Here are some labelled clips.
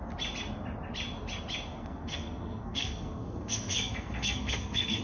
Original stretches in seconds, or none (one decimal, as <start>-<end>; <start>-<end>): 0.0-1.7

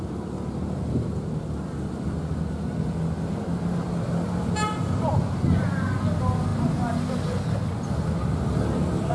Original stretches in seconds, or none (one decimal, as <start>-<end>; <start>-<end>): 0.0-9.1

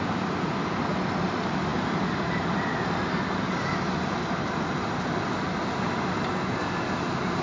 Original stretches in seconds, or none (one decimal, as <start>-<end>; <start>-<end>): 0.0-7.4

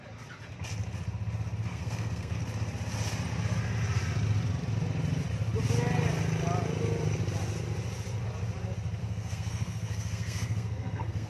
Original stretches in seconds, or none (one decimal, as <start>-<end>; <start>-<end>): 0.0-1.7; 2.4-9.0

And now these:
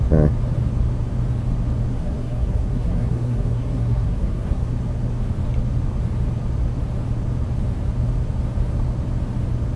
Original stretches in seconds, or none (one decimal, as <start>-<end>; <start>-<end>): 0.0-1.9; 4.7-9.8